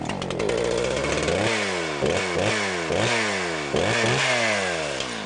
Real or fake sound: real